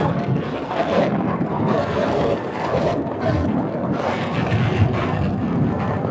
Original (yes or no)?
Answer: no